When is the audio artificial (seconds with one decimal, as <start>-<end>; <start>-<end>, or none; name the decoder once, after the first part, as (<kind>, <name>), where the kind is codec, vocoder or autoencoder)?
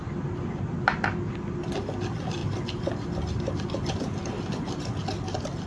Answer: none